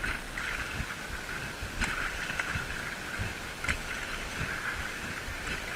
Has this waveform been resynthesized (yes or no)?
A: no